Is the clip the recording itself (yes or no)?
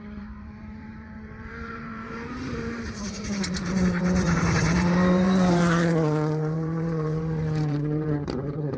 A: no